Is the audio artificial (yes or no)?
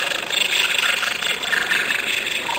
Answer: no